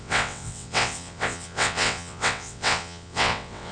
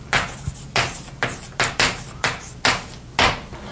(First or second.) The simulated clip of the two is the first